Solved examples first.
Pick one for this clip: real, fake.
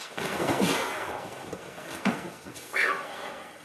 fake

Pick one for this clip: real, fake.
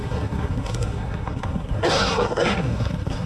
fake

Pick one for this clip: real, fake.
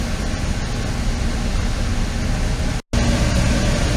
real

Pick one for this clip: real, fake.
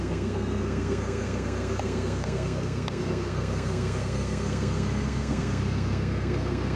fake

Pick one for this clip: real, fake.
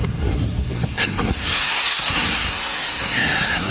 fake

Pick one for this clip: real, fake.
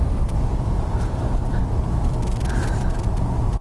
fake